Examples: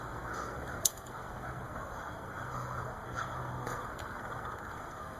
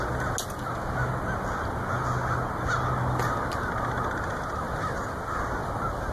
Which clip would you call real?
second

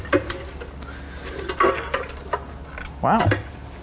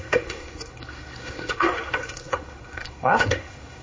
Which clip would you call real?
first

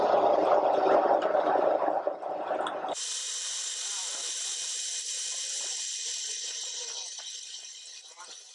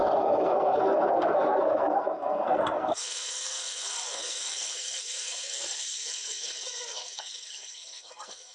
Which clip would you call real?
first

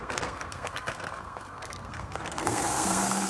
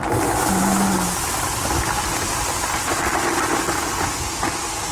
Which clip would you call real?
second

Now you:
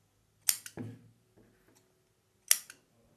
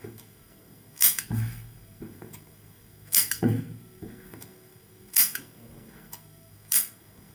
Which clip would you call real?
first